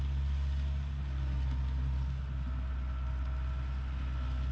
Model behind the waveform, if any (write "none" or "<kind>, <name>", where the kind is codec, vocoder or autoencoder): none